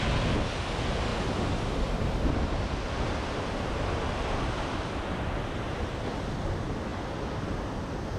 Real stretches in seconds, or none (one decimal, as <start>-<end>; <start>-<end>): 0.0-8.2